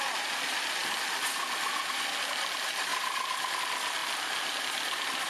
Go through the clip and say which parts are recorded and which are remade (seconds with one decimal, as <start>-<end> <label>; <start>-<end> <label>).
0.0-5.3 recorded